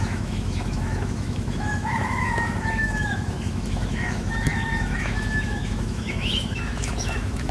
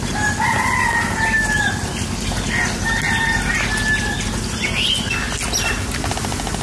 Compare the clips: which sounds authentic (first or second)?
second